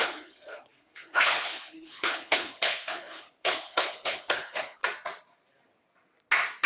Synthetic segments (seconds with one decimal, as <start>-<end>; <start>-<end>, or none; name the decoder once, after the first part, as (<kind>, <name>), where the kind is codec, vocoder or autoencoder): 0.0-4.8 (codec, HILCodec)